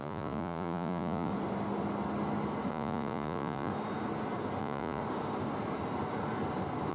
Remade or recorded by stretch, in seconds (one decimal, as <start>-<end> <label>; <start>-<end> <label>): 0.0-1.3 remade; 1.3-2.7 recorded; 2.7-3.7 remade; 3.7-4.6 recorded; 4.6-5.0 remade; 5.0-6.9 recorded